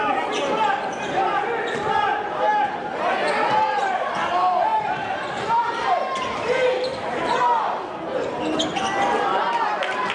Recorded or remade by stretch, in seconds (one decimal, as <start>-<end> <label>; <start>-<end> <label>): 0.0-4.7 recorded; 4.7-7.2 remade; 7.2-10.1 recorded